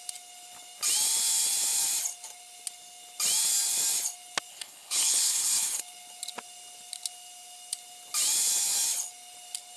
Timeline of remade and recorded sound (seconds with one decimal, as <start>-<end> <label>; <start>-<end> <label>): 0.0-4.5 recorded; 4.5-5.8 remade; 5.8-9.8 recorded